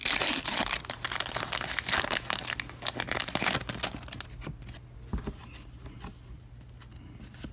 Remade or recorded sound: recorded